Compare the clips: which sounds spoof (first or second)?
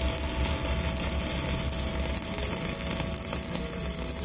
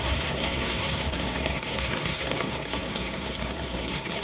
second